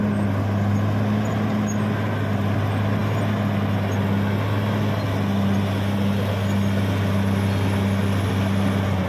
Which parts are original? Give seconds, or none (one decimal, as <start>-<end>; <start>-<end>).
0.0-9.1